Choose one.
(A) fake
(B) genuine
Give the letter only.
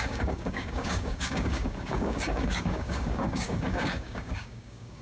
A